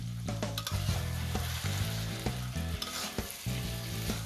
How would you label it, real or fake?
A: real